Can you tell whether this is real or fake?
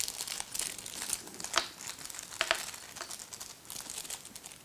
real